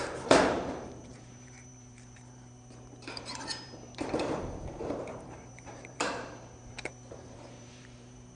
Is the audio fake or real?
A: fake